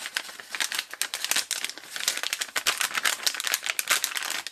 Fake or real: real